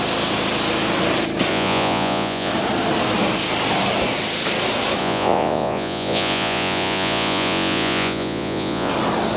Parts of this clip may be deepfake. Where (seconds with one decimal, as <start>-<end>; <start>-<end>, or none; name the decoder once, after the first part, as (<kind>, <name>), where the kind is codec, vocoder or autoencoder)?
1.5-2.5 (vocoder, Vocos); 5.0-8.9